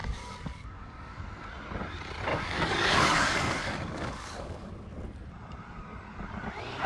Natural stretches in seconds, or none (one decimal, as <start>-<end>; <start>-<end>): 1.2-2.3; 4.7-6.9